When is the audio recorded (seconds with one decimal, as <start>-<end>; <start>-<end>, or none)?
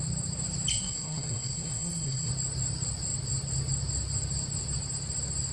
0.0-0.7; 2.3-5.5